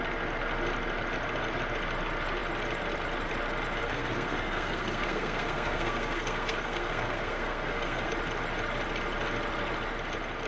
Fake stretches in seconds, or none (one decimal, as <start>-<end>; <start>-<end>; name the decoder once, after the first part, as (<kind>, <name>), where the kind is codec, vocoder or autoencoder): 3.8-8.1 (codec, SNAC)